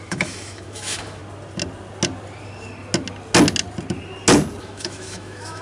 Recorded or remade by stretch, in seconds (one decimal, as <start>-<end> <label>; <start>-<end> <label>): 0.0-1.2 remade; 1.2-4.6 recorded; 4.6-5.6 remade